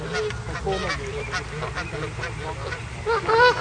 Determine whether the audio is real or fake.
real